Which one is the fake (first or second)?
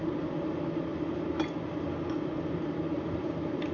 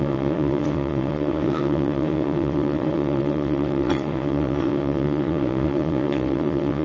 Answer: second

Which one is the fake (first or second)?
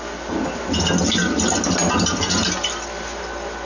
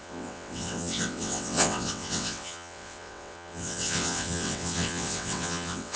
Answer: second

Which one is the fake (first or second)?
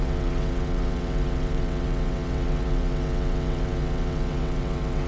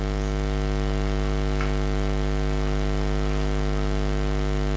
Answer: first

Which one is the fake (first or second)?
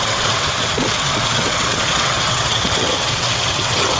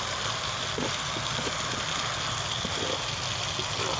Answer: first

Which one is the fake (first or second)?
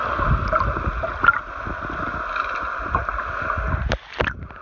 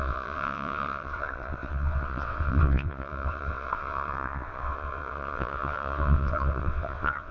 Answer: second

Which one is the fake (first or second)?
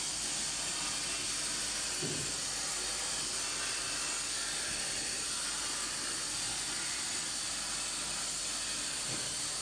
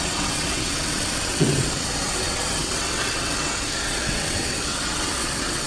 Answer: second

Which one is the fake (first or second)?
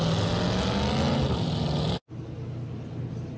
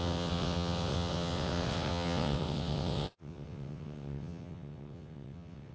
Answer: second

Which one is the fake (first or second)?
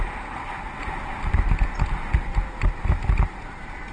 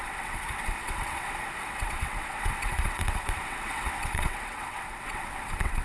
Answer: second